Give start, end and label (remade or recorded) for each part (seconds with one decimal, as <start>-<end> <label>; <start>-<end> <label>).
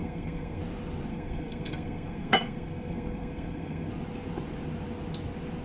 0.0-0.6 remade; 0.6-1.1 recorded; 1.1-3.9 remade; 3.9-5.6 recorded